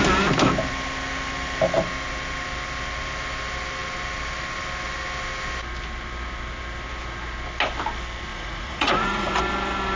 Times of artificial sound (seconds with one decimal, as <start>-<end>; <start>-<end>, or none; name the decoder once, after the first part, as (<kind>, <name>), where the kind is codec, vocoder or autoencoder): 8.3-9.4 (vocoder, Vocos)